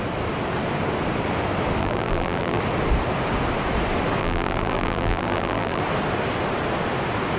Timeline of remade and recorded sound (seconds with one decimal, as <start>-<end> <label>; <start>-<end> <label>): 0.0-1.8 recorded; 1.8-2.6 remade; 2.6-4.2 recorded; 4.2-5.8 remade; 5.8-7.4 recorded